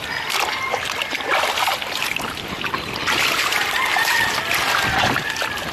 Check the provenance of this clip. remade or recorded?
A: recorded